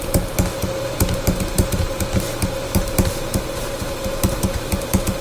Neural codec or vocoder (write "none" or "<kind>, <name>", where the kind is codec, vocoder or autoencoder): none